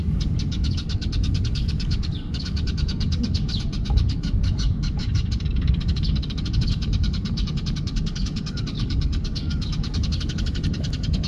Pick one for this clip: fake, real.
fake